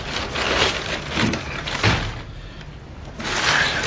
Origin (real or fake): real